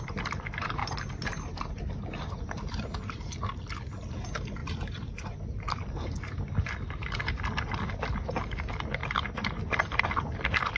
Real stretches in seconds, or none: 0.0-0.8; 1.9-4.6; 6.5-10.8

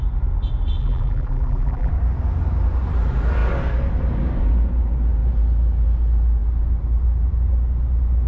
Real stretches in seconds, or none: 0.0-0.8; 1.9-8.3

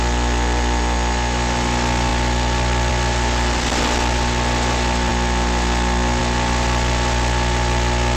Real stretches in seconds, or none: 0.0-2.1; 2.9-8.2

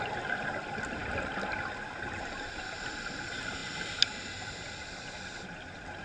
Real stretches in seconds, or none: 0.0-1.0; 3.1-6.0

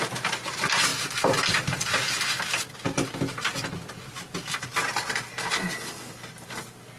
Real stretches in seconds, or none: 0.0-7.0

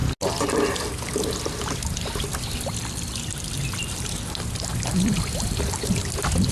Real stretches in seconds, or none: 0.0-6.5